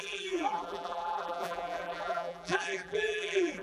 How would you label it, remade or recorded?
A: remade